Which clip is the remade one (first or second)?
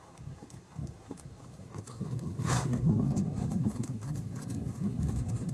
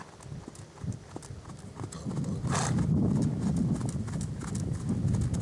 first